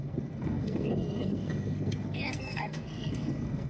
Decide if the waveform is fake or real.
fake